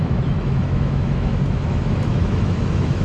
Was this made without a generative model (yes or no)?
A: no